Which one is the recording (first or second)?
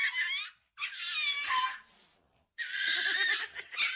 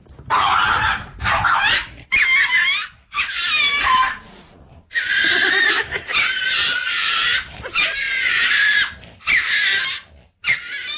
first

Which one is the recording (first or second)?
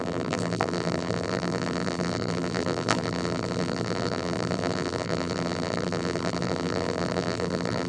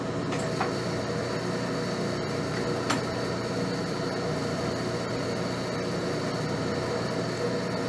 second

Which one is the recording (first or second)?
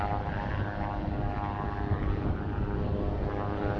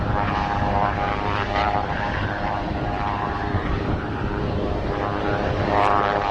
first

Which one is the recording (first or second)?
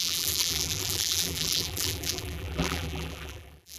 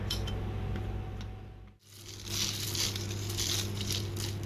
second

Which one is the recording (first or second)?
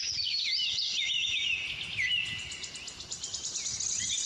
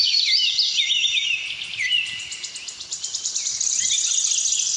first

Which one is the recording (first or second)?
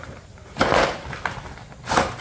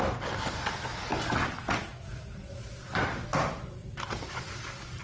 second